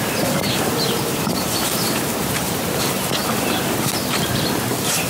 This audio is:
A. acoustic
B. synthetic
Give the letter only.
B